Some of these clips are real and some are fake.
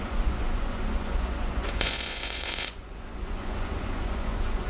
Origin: fake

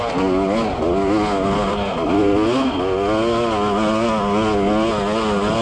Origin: real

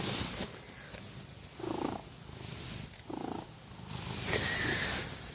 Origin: real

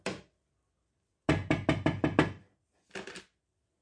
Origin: real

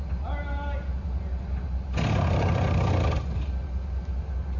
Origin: real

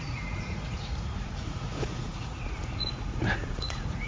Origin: fake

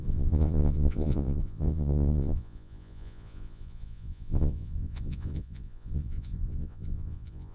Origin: fake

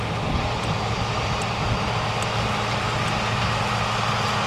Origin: real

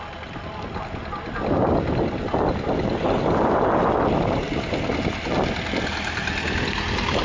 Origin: real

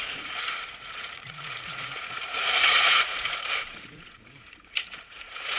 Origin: fake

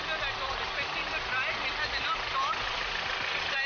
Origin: real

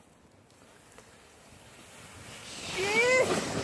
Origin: real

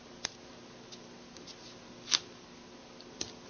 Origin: real